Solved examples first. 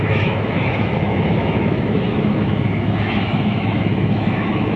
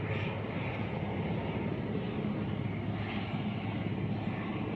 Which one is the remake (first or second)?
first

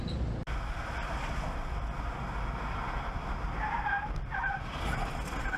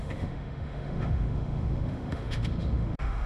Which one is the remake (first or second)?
second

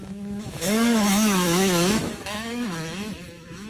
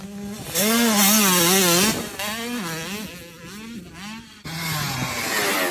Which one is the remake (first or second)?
first